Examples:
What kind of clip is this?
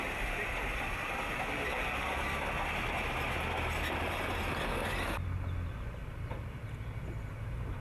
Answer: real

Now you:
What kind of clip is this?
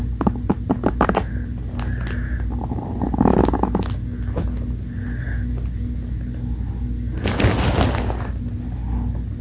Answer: real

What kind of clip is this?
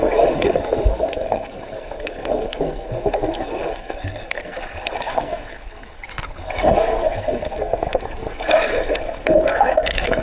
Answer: fake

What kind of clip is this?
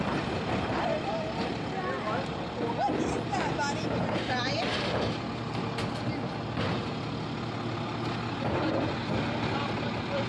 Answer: real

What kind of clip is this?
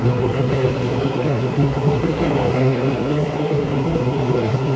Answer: fake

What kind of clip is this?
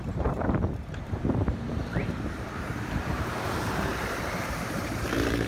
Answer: fake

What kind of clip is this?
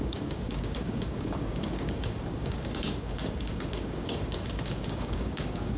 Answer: fake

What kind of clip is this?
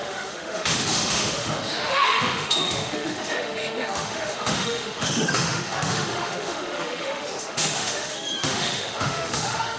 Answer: fake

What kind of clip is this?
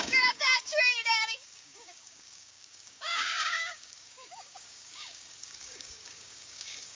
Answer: fake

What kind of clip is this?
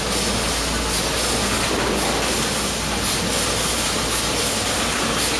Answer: real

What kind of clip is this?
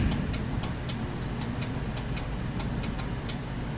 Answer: real